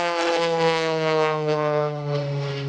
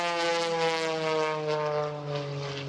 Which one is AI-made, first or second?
first